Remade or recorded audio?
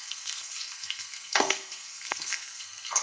remade